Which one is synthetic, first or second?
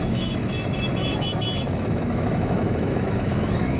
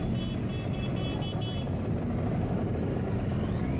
first